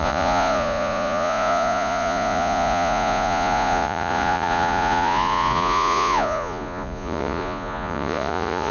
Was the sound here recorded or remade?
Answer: remade